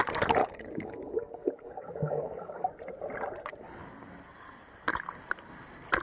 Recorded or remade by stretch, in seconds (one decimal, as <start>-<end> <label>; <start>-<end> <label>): 0.0-0.4 recorded; 0.4-2.7 remade; 2.7-6.0 recorded